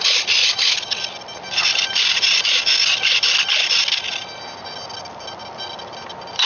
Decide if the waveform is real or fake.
real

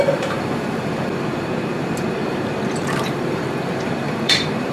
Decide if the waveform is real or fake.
fake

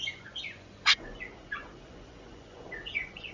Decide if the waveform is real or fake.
fake